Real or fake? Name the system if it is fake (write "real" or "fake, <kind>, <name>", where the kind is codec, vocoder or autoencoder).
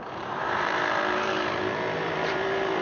fake, vocoder, BigVGAN v2